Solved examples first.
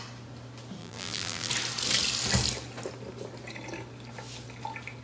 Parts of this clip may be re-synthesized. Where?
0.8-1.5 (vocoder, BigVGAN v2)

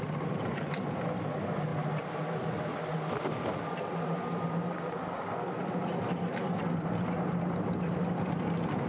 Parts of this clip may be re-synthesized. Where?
none